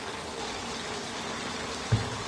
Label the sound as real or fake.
real